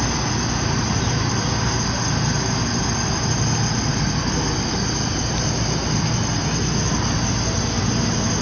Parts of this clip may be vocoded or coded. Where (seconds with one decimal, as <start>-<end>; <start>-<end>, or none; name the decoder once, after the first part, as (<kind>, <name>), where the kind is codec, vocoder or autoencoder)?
none